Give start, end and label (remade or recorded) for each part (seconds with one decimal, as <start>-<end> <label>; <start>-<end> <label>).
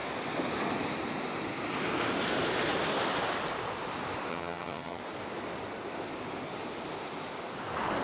0.0-4.3 recorded; 4.3-5.0 remade; 5.0-8.0 recorded